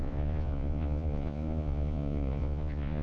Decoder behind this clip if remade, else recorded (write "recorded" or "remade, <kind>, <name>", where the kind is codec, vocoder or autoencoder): remade, vocoder, Vocos